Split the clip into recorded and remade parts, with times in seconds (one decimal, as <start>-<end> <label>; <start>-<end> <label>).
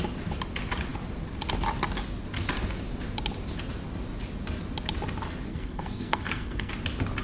0.0-5.5 recorded; 5.5-6.7 remade; 6.7-7.2 recorded